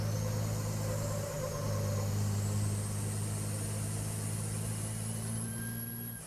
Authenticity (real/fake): real